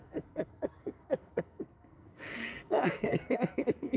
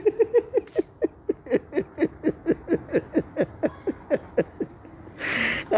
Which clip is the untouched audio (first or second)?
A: second